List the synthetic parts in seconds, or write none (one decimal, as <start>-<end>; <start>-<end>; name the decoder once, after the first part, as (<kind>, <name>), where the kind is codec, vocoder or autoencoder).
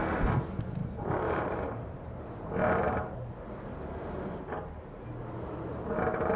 0.8-3.6 (vocoder, BigVGAN v2); 5.7-6.4